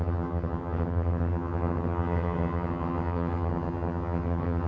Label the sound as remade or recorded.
remade